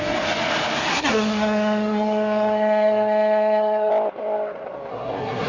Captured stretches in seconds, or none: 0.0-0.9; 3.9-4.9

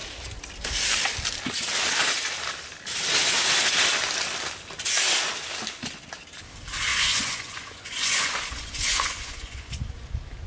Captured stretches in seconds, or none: 0.0-6.9; 10.1-10.5